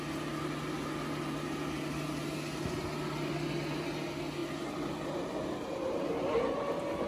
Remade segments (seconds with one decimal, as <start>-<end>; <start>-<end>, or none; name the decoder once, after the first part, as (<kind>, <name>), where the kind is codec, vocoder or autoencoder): 4.4-5.7 (vocoder, BigVGAN v2)